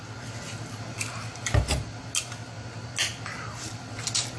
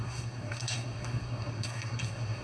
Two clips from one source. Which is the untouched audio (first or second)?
first